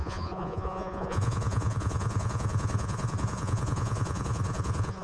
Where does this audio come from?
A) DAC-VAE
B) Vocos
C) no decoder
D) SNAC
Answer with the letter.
B